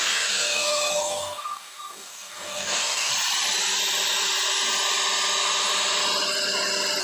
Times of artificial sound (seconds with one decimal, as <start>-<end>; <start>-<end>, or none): 0.0-3.1